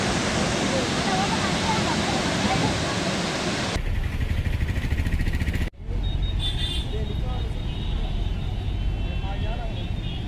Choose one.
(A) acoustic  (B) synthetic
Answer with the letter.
A